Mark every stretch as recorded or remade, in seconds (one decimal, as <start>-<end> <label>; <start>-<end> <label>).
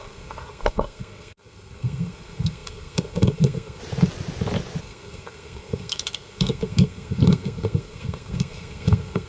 0.0-3.8 remade; 3.8-4.8 recorded; 4.8-9.3 remade